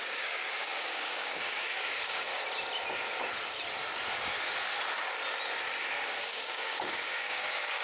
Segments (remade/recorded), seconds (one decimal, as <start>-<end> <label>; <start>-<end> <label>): 0.0-2.3 remade; 2.3-6.2 recorded; 6.2-7.8 remade